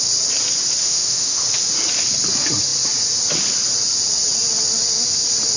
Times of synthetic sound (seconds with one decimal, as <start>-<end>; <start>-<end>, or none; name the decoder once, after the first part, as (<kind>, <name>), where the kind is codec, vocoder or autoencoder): 0.8-1.4 (autoencoder, DAC-VAE)